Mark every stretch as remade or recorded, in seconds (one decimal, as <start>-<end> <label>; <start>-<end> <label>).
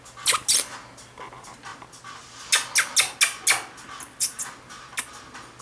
0.0-5.6 recorded